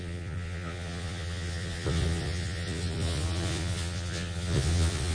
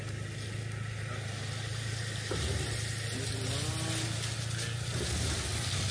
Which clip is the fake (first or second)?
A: first